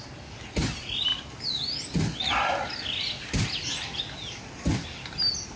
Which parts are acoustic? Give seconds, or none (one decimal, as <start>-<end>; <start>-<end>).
0.0-5.6